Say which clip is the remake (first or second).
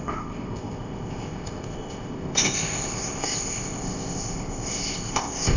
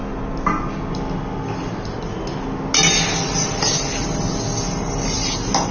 first